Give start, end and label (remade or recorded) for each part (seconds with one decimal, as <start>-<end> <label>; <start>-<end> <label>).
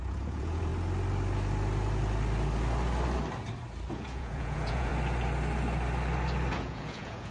0.0-0.7 remade; 0.7-3.9 recorded; 3.9-4.9 remade; 4.9-6.5 recorded; 6.5-7.3 remade